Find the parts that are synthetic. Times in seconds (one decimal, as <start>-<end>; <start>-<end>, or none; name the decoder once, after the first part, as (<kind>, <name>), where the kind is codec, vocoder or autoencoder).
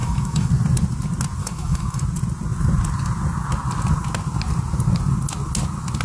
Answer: 0.0-0.5 (autoencoder, DAC-VAE); 1.4-2.0